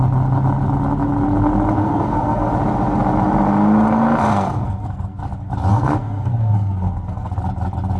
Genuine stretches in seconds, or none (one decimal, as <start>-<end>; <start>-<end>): 0.0-1.8; 2.5-4.3; 5.2-5.7; 7.3-8.0